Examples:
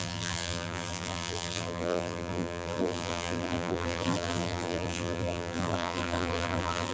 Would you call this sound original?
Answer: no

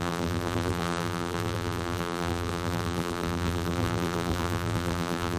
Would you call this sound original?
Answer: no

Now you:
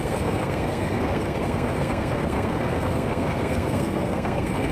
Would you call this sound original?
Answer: no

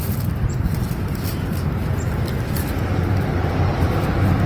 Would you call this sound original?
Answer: yes